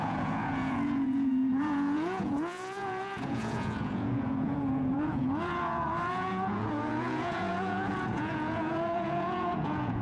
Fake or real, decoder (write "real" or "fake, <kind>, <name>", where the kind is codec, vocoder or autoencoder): fake, vocoder, Vocos